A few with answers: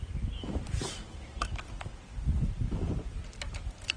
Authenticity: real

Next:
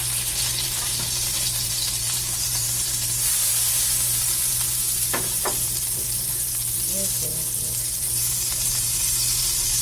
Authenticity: fake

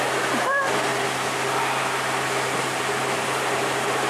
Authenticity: real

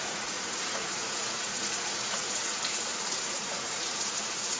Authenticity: fake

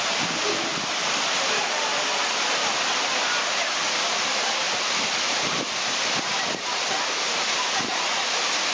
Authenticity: real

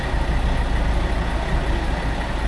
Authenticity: real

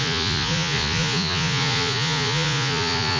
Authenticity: fake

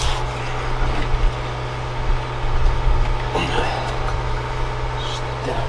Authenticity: real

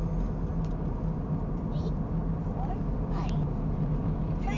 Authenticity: real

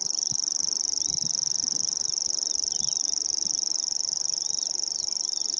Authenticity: real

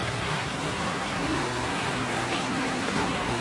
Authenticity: fake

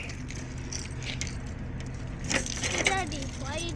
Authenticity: real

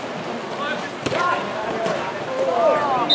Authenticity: real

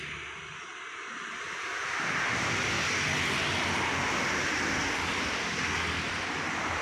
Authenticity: real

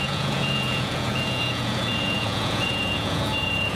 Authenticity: fake